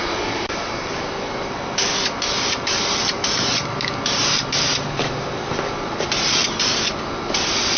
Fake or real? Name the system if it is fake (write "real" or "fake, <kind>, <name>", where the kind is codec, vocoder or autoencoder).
fake, vocoder, BigVGAN v2